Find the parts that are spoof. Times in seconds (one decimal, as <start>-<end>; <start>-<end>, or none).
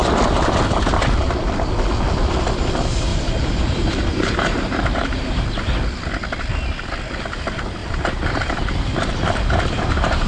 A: 3.1-5.5; 7.8-10.3